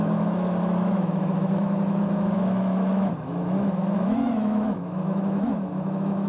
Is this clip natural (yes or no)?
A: no